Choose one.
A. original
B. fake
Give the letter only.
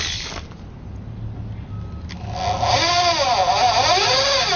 A